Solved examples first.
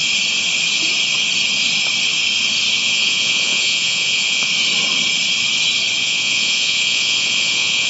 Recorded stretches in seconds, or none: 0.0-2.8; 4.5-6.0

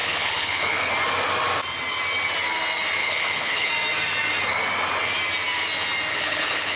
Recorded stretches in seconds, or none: 0.9-3.0; 3.7-6.1